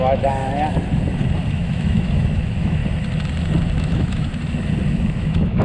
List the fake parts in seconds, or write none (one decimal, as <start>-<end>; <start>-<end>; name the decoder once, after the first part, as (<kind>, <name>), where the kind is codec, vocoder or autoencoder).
0.0-0.4 (autoencoder, DAC-VAE); 1.5-2.8; 3.8-4.3; 4.9-5.6